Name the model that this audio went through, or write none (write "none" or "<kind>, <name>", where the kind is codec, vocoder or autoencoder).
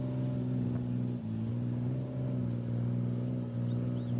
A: none